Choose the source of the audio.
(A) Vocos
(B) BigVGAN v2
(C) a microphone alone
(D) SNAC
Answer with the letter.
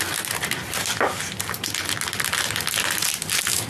C